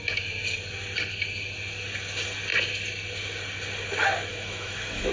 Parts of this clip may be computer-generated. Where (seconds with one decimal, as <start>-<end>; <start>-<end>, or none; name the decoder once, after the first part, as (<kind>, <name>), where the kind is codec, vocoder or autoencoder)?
4.3-5.1 (autoencoder, DAC-VAE)